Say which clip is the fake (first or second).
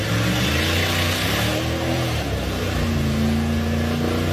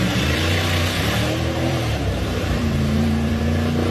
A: second